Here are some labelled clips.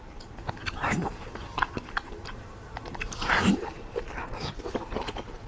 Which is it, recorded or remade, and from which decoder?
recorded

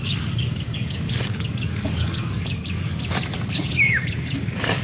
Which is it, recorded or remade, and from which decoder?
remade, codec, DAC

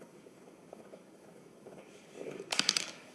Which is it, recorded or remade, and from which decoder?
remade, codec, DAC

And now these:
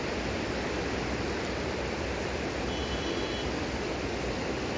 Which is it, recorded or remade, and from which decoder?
recorded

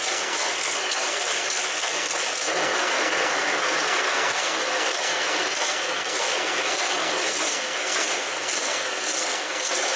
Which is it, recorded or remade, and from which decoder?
remade, codec, SNAC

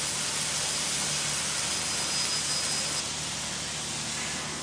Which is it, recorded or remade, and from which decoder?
recorded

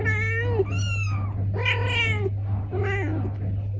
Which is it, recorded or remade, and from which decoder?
recorded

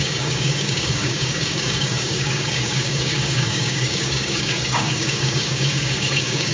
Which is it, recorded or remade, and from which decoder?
remade, codec, DAC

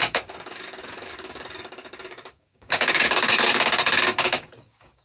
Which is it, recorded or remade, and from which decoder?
remade, codec, DAC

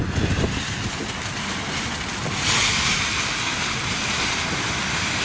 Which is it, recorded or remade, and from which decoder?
recorded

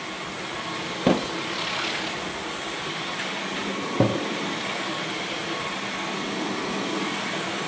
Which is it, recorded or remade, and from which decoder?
recorded